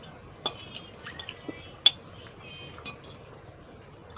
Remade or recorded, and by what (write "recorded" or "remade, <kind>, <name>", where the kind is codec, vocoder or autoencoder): recorded